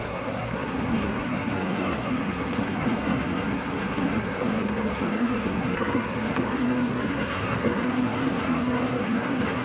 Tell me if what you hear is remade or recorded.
remade